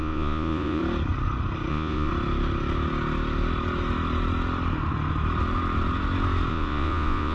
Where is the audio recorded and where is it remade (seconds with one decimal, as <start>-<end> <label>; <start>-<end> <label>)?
0.0-0.8 remade; 0.8-1.7 recorded; 1.7-2.1 remade; 2.1-6.5 recorded; 6.5-7.3 remade